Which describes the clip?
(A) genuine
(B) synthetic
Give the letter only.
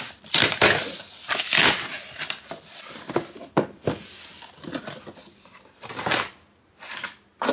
A